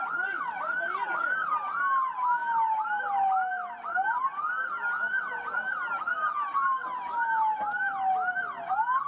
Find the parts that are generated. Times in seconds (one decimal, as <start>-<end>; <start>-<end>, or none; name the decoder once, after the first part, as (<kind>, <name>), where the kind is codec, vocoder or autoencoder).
none